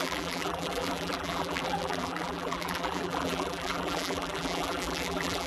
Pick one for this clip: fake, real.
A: fake